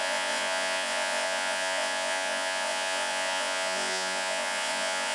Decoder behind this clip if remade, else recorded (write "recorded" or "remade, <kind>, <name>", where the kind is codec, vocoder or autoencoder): remade, vocoder, Vocos